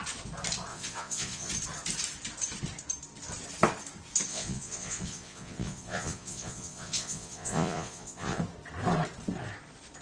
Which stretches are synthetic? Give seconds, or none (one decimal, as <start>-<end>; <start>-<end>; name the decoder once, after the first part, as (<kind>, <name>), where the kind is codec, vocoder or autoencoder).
0.7-1.5 (vocoder, Vocos); 4.3-8.4